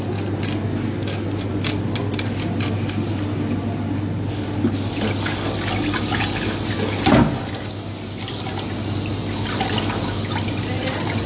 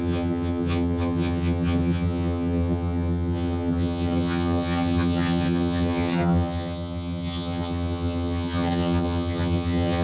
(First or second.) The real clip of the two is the first